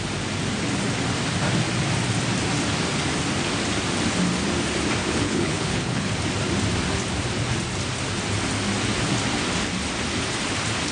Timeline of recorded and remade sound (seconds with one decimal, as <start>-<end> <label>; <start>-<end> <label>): 0.0-5.0 recorded; 5.0-6.1 remade; 6.1-10.9 recorded

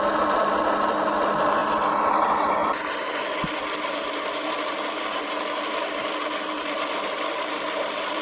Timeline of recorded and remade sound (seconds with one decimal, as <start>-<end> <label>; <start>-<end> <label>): 0.0-8.2 recorded

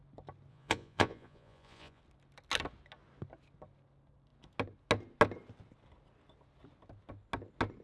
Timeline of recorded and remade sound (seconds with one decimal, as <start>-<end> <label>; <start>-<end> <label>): 0.0-0.5 recorded; 0.5-2.0 remade; 2.0-7.8 recorded

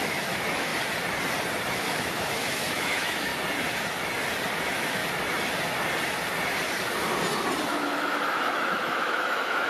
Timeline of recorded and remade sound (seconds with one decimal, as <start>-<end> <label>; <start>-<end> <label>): 0.0-0.7 remade; 0.7-1.7 recorded; 1.7-3.3 remade; 3.3-4.6 recorded; 4.6-5.0 remade; 5.0-7.7 recorded; 7.7-9.7 remade

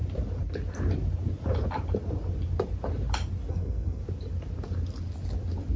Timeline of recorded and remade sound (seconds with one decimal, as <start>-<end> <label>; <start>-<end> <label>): 0.0-3.5 recorded; 3.5-4.0 remade; 4.0-5.8 recorded

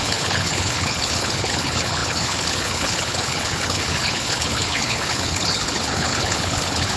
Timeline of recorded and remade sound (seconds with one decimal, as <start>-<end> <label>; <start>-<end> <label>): 0.0-7.0 remade

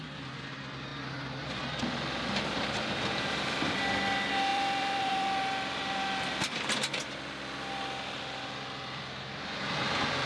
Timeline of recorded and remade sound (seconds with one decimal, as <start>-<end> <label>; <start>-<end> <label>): 0.0-4.5 recorded; 4.5-8.2 remade; 8.2-10.3 recorded

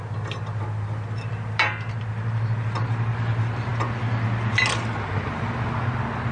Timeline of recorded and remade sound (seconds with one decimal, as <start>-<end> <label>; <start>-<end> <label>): 0.0-6.3 recorded